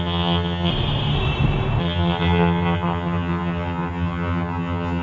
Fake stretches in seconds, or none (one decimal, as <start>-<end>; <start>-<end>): 0.0-0.7; 1.8-5.0